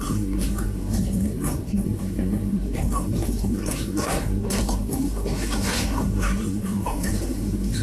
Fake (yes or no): yes